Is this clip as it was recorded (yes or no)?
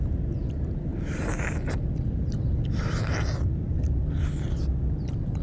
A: yes